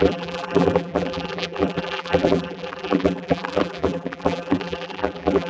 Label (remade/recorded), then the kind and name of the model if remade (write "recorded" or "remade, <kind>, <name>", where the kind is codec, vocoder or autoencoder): remade, vocoder, BigVGAN v2